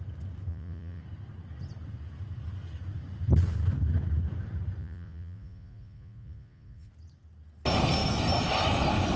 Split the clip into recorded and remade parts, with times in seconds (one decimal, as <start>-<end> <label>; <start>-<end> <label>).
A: 0.0-0.5 recorded; 0.5-1.0 remade; 1.0-4.8 recorded; 4.8-6.9 remade; 6.9-9.2 recorded